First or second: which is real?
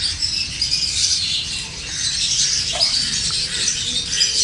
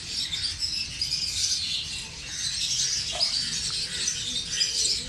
second